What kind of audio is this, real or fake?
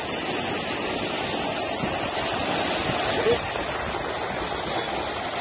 real